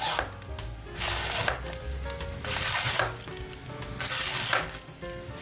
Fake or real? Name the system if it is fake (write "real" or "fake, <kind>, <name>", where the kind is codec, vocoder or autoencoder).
real